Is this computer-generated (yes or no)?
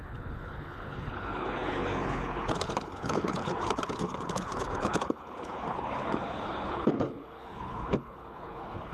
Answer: yes